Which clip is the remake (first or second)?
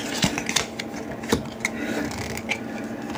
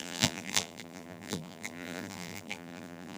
second